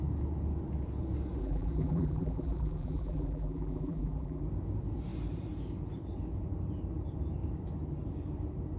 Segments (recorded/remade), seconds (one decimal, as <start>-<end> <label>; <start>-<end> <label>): 0.0-1.4 recorded; 1.4-4.4 remade; 4.4-8.8 recorded